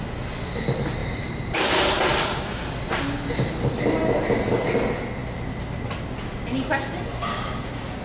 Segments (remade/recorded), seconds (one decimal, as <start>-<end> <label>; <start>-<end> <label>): 0.0-8.0 recorded